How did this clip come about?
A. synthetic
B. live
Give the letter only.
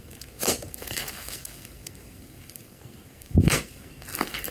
A